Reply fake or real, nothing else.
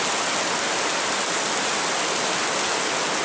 real